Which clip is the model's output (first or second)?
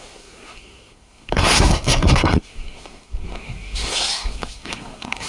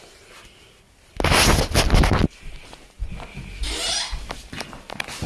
first